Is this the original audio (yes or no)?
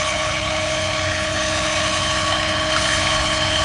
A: no